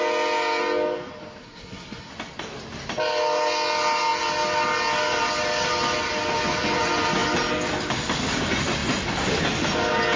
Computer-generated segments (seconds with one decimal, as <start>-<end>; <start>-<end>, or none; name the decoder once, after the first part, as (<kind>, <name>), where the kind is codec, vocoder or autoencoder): 1.4-2.1 (codec, SNAC)